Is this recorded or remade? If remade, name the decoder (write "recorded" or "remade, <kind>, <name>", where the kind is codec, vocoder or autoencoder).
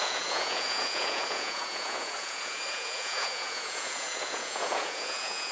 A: remade, vocoder, Vocos